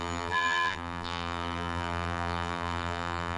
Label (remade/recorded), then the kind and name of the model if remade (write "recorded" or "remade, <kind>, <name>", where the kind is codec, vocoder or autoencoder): remade, vocoder, BigVGAN v2